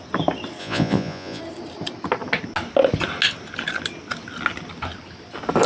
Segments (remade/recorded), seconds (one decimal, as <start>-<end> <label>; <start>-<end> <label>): 0.0-0.6 recorded; 0.6-1.4 remade; 1.4-5.7 recorded